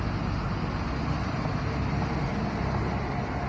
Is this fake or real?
real